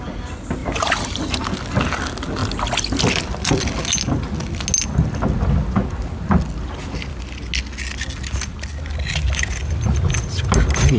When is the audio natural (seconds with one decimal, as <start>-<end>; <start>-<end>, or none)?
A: 0.0-11.0